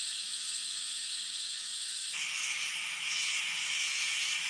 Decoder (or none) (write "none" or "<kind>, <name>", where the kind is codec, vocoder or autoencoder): autoencoder, DAC-VAE